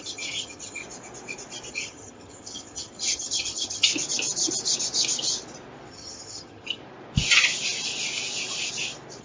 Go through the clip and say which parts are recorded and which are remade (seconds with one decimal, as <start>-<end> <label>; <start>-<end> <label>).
0.0-0.8 remade; 0.8-1.7 recorded; 1.7-3.9 remade; 3.9-5.9 recorded; 5.9-6.8 remade; 6.8-9.2 recorded